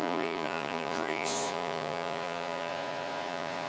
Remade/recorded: remade